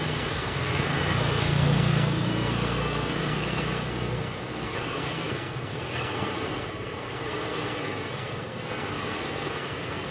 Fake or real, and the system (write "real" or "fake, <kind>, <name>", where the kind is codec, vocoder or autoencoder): fake, codec, SNAC